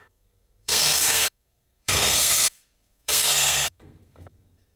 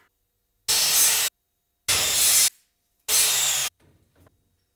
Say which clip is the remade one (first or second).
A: first